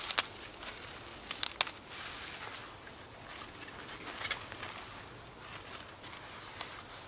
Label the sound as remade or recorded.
recorded